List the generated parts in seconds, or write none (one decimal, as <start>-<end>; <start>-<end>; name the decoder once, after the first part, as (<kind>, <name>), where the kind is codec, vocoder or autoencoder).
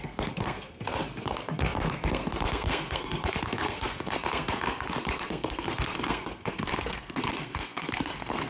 0.0-8.5 (codec, SNAC)